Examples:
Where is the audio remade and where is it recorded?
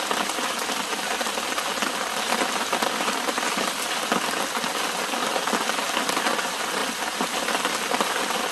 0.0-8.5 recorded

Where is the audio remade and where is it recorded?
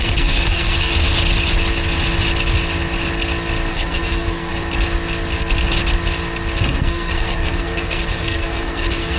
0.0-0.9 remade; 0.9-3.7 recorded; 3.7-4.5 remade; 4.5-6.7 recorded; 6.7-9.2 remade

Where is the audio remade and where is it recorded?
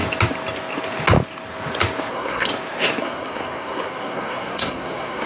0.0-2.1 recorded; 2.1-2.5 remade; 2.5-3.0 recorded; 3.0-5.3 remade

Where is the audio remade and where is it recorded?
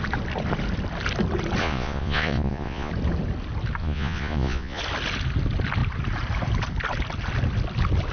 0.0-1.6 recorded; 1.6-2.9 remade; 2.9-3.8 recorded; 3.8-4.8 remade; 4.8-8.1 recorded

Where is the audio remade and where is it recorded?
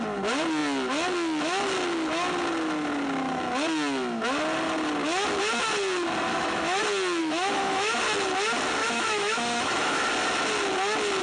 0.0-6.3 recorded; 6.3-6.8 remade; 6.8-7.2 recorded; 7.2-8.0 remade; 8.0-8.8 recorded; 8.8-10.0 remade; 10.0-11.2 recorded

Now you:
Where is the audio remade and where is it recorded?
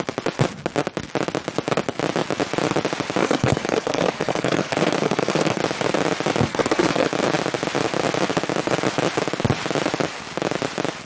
0.0-3.2 recorded; 3.2-5.6 remade; 5.6-6.5 recorded; 6.5-7.1 remade; 7.1-11.1 recorded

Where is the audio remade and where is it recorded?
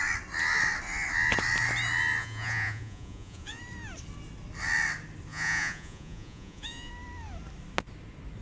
0.0-2.2 recorded; 2.2-3.6 remade; 3.6-5.3 recorded; 5.3-6.9 remade; 6.9-8.4 recorded